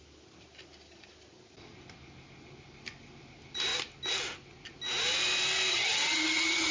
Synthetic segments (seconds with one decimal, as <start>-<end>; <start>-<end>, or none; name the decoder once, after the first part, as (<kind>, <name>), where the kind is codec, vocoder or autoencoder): 5.7-6.7 (vocoder, HiFi-GAN)